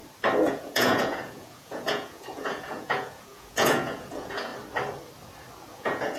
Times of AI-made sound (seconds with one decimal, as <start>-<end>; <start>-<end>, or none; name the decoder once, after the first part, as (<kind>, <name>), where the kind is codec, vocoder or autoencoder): 0.5-4.5 (vocoder, Vocos); 5.7-6.2